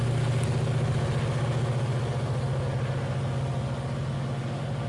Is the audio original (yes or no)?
yes